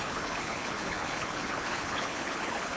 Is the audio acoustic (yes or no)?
no